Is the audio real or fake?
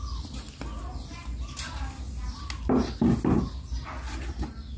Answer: real